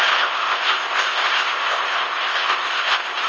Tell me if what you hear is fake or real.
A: fake